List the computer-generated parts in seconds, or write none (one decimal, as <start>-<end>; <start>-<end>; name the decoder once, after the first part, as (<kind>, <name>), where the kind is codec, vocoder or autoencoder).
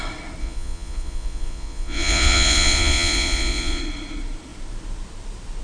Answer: 0.4-3.8 (vocoder, Vocos)